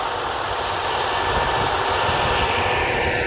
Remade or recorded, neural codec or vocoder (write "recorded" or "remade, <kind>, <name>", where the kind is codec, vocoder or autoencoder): recorded